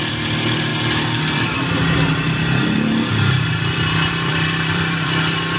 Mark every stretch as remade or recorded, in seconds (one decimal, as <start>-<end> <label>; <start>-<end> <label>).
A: 0.0-0.7 remade; 0.7-4.1 recorded; 4.1-5.6 remade